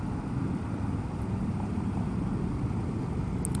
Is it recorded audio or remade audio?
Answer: recorded